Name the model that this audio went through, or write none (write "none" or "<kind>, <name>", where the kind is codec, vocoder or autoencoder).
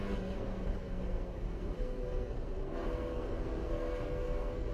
codec, SNAC